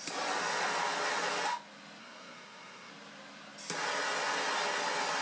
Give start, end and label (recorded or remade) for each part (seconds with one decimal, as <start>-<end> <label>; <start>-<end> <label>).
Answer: 0.0-2.0 recorded; 2.0-2.9 remade; 2.9-5.2 recorded

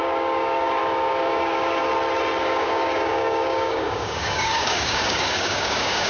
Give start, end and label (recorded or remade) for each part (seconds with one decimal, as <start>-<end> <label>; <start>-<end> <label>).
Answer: 0.0-1.8 remade; 1.8-2.4 recorded; 2.4-6.1 remade